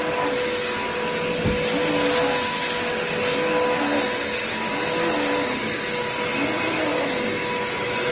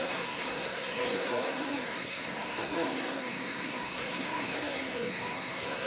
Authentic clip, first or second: first